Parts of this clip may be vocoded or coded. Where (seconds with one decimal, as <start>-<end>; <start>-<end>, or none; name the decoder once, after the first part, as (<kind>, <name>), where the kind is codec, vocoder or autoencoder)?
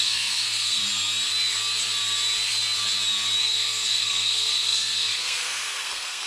0.0-0.8 (codec, SNAC); 3.4-6.3